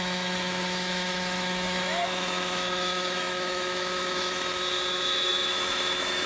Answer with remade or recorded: remade